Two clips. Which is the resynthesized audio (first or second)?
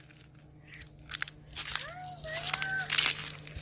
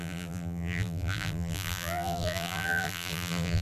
second